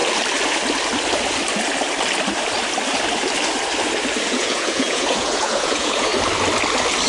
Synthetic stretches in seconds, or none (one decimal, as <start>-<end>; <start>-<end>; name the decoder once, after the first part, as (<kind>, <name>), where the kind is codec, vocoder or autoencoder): 4.3-6.1 (vocoder, Vocos)

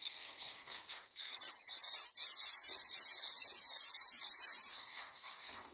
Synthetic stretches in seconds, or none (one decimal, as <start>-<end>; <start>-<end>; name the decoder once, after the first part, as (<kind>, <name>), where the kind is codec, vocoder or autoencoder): 0.0-1.3 (codec, SNAC); 4.7-5.7

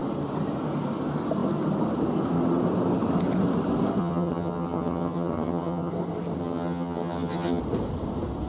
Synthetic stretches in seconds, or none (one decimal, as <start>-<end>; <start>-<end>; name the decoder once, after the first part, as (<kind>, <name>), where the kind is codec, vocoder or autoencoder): 4.0-5.9 (vocoder, HiFi-GAN); 6.4-7.6

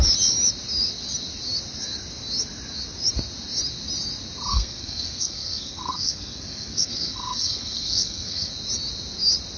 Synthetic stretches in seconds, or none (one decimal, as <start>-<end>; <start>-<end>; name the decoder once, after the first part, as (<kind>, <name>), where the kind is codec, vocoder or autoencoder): 4.5-8.5 (codec, SNAC)